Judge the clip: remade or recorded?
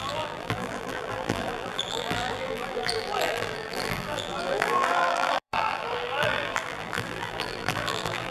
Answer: remade